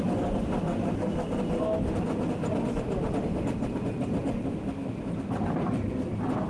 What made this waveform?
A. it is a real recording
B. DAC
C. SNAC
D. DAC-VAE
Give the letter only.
A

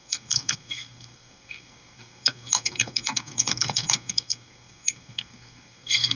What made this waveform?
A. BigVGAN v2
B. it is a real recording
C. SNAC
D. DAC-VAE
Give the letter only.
C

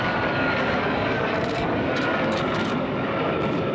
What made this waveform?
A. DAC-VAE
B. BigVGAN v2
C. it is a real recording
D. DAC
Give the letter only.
D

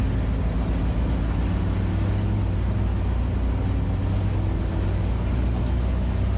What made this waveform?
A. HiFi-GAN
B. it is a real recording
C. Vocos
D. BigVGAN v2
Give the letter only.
B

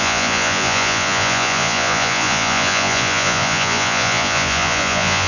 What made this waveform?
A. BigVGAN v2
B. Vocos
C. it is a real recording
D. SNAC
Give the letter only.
B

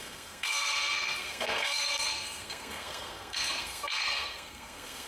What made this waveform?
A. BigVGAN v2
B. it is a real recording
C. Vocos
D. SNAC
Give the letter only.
D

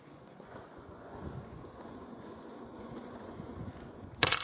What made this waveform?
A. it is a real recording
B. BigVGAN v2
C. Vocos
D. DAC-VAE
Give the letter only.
C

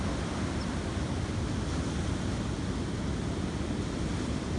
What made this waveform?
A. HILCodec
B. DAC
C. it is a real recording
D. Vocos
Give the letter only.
C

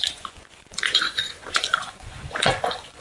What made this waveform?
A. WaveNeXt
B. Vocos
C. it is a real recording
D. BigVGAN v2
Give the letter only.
B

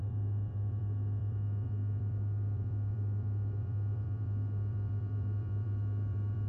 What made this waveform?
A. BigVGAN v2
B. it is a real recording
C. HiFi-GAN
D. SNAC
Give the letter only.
A